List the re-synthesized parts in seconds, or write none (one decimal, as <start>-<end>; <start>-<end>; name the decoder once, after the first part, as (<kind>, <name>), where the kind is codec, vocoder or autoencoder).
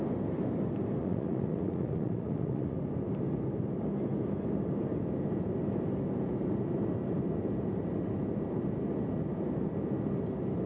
1.0-2.8 (vocoder, Vocos)